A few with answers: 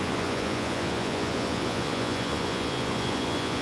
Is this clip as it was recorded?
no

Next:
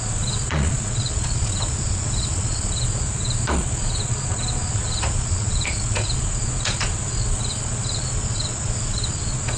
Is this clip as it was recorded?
no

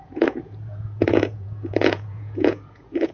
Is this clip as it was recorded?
no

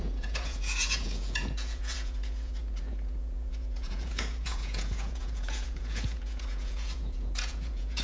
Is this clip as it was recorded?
no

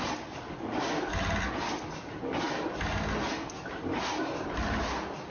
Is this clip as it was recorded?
yes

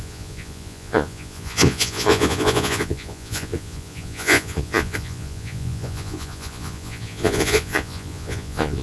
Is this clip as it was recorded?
no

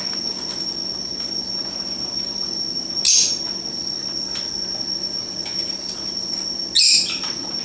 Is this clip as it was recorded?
yes